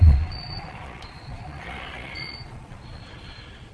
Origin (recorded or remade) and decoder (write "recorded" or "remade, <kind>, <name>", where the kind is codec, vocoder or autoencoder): remade, vocoder, Vocos